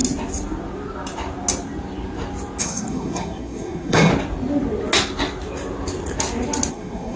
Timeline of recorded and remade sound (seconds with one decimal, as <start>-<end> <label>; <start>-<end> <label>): 0.0-2.6 recorded; 2.6-4.1 remade; 4.1-6.7 recorded; 6.7-7.2 remade

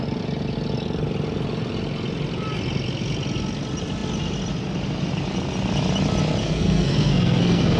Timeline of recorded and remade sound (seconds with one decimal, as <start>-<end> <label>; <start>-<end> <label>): 0.0-6.4 recorded; 6.4-7.8 remade

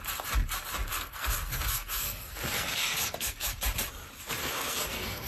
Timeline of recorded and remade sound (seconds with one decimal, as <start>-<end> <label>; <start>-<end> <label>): 0.0-0.9 recorded; 0.9-3.6 remade; 3.6-4.4 recorded; 4.4-5.3 remade

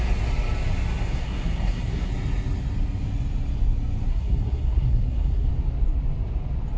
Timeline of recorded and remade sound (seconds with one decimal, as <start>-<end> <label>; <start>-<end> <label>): 0.0-1.0 recorded; 1.0-2.1 remade; 2.1-4.1 recorded; 4.1-5.5 remade; 5.5-6.8 recorded